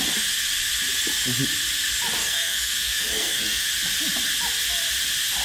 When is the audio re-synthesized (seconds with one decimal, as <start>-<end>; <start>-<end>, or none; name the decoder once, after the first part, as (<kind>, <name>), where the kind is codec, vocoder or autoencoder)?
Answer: 2.2-3.7 (codec, SNAC)